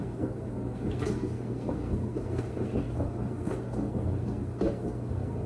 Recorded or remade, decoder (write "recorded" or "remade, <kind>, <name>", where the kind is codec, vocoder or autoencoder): remade, codec, SNAC